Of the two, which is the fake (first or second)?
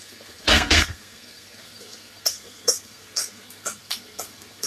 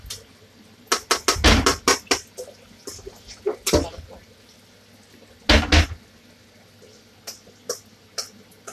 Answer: first